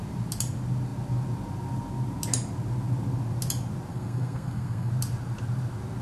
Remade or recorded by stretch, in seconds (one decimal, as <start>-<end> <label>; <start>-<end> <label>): 0.0-3.9 recorded; 3.9-4.9 remade; 4.9-6.0 recorded